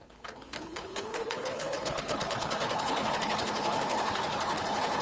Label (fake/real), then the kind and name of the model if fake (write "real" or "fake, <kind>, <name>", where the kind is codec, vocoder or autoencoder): fake, codec, HILCodec